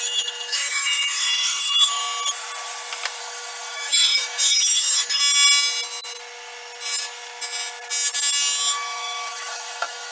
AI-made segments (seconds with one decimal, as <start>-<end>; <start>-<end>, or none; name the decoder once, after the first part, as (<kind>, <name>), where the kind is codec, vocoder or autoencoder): 0.0-2.0 (autoencoder, DAC-VAE); 3.2-5.2; 8.7-10.1